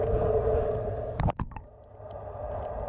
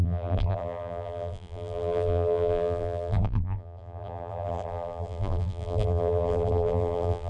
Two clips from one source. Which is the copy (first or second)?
second